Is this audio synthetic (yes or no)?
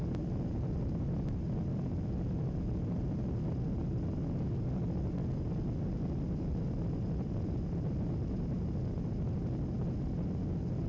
no